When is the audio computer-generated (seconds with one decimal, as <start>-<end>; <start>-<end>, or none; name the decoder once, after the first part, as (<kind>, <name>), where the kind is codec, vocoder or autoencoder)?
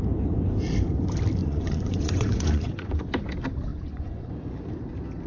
1.4-3.1 (vocoder, Vocos); 3.7-4.3